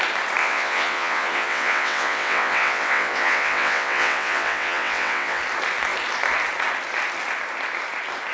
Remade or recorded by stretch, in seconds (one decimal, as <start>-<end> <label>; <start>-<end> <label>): 0.0-0.4 recorded; 0.4-5.4 remade; 5.4-8.3 recorded